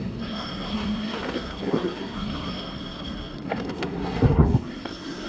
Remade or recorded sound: remade